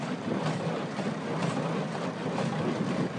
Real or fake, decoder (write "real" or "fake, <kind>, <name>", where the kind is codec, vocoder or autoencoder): real